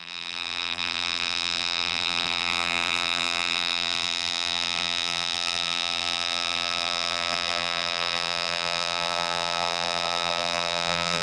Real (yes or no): no